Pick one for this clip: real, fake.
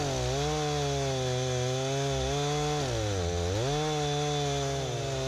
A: real